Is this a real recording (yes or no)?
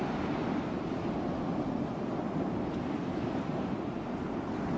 yes